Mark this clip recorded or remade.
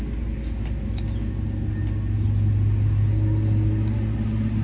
recorded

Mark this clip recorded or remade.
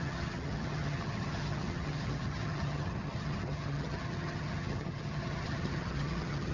remade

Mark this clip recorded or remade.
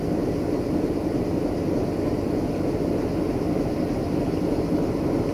recorded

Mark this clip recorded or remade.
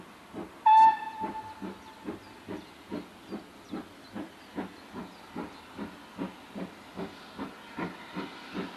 recorded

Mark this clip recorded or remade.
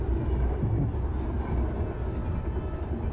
recorded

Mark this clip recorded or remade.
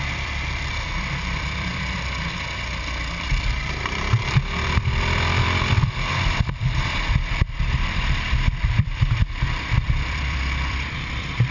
remade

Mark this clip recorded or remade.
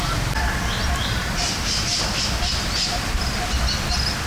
recorded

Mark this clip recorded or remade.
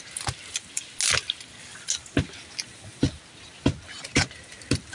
recorded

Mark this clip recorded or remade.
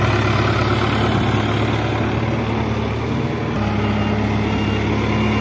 recorded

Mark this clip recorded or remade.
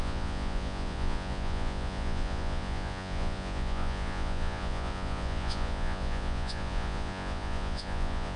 remade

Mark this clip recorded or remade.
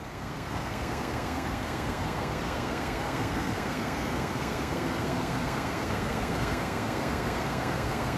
remade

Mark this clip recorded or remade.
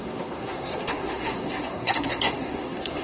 remade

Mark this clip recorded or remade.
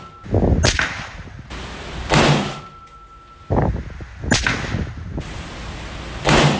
recorded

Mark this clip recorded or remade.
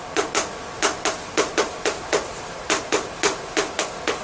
recorded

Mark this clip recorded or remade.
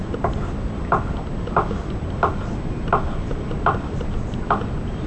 recorded